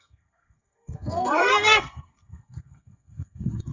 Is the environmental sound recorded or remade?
remade